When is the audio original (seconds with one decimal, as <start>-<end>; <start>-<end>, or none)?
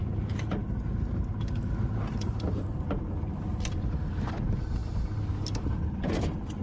0.0-6.6